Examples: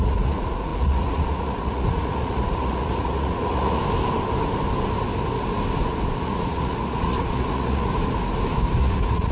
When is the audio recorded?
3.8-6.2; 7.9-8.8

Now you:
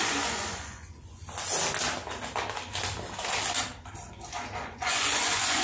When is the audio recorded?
1.2-4.6

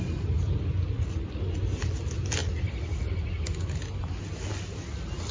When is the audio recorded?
0.0-5.3

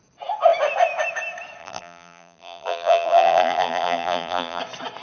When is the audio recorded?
0.0-1.6; 4.6-5.0

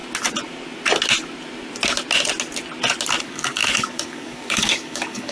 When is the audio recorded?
0.0-3.2